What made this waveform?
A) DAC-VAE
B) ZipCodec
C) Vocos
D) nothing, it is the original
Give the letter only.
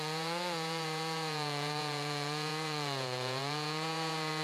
C